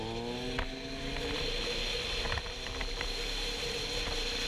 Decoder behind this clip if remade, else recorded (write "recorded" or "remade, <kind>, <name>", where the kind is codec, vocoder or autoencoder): recorded